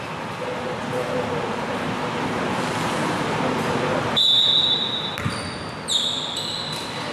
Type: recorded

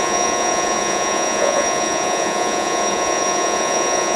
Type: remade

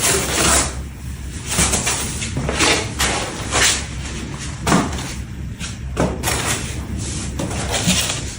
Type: recorded